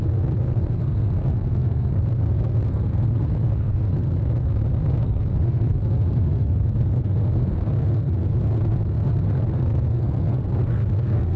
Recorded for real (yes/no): no